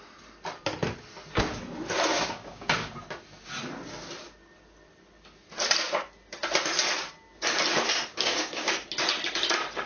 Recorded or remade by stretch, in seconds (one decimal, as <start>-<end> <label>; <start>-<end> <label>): 0.0-2.1 recorded; 2.1-2.7 remade; 2.7-8.1 recorded; 8.1-8.7 remade; 8.7-9.9 recorded